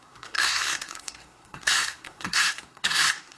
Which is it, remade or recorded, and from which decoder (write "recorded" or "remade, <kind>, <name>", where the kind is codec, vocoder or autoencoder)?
remade, codec, SNAC